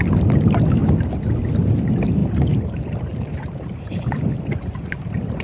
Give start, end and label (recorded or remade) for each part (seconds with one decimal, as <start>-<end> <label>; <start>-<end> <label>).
0.0-5.4 recorded